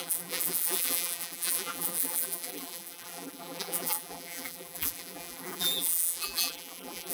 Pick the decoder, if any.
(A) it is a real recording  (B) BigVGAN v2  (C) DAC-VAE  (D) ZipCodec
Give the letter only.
B